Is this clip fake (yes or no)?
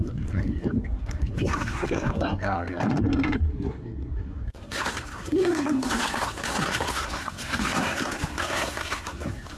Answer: yes